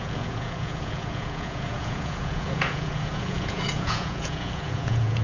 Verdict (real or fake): fake